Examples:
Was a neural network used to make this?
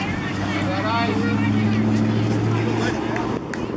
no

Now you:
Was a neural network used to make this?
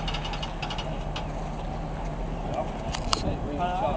no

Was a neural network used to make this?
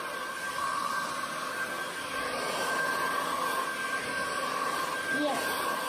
no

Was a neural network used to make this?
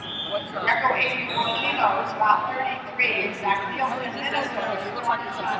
no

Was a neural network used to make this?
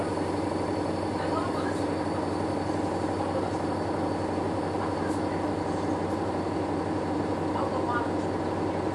no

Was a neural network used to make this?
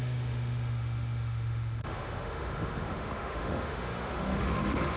yes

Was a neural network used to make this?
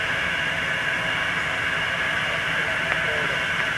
no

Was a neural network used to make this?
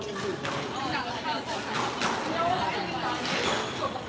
no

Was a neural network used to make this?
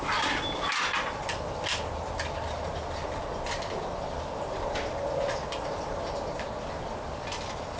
no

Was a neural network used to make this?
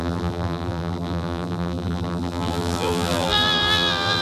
yes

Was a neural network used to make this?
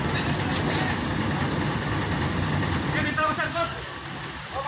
yes